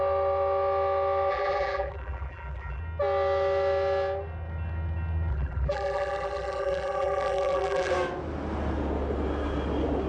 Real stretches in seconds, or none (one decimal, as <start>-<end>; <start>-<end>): 0.0-1.3; 2.8-5.3; 7.9-10.1